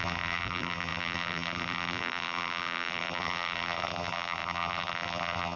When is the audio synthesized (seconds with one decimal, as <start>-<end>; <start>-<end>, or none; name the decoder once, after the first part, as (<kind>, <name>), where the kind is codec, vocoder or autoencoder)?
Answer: 0.0-5.6 (vocoder, BigVGAN v2)